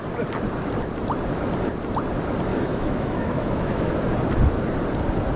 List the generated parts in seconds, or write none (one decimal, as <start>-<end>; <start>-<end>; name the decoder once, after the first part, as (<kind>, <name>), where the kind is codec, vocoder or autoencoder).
2.5-3.9 (autoencoder, DAC-VAE)